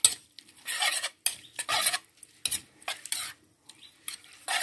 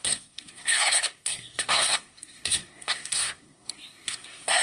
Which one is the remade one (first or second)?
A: second